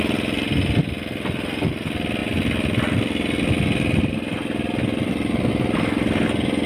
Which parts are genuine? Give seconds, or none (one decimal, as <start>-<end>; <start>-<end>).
0.0-6.7